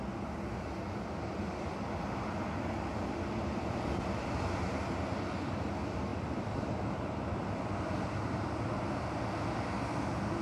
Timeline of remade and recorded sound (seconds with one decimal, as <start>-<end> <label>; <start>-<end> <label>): 0.0-0.8 recorded; 0.8-1.7 remade; 1.7-6.1 recorded; 6.1-8.8 remade; 8.8-10.4 recorded